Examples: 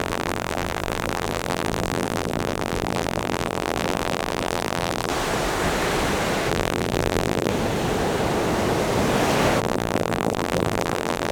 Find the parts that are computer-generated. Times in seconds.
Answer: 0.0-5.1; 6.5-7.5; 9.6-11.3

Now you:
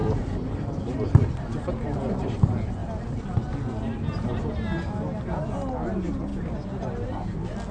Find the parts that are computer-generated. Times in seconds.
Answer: none

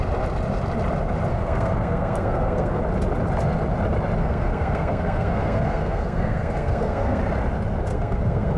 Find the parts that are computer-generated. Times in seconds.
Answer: 1.3-2.8; 4.2-7.2; 7.9-8.6

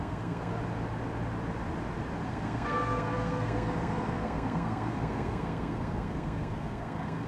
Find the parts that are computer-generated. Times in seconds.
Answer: 0.0-0.5; 2.3-7.3

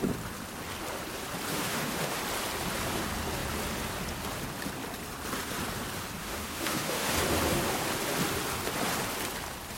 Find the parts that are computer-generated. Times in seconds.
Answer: 1.5-2.2; 6.2-7.1

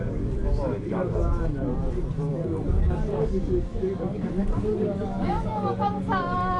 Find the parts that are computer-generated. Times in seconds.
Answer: 0.0-1.7; 2.3-6.6